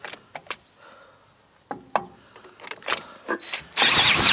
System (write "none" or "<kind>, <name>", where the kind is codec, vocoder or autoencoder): none